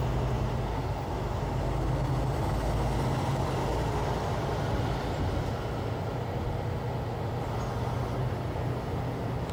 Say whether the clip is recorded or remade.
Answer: recorded